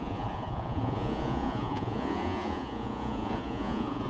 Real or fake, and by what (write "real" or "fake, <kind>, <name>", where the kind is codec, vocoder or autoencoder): fake, vocoder, Vocos